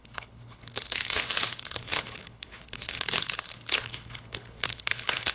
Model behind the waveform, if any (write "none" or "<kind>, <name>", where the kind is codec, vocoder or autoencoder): codec, HILCodec